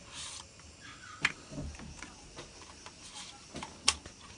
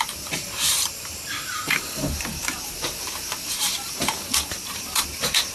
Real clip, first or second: first